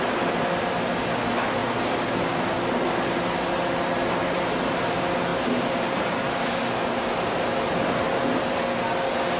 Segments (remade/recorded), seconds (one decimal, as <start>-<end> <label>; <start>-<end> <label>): 0.0-5.3 recorded; 5.3-6.1 remade; 6.1-9.4 recorded